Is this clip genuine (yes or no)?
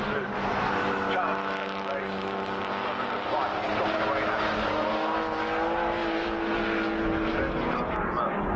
yes